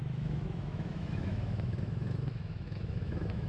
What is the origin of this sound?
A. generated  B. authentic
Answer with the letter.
A